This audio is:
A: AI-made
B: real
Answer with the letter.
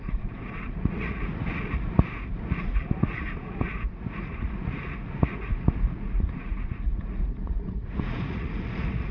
A